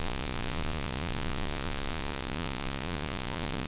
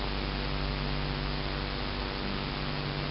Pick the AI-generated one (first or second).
first